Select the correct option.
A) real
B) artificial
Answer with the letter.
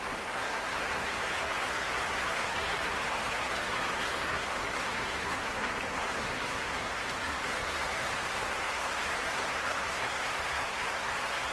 B